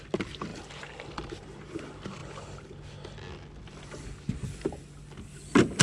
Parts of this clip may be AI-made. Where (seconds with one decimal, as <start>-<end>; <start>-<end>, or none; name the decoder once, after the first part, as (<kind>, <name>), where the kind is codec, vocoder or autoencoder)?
none